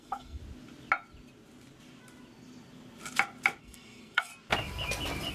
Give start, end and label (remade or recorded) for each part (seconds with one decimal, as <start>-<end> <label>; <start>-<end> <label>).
0.0-0.4 remade; 0.4-3.6 recorded; 3.6-4.3 remade; 4.3-5.3 recorded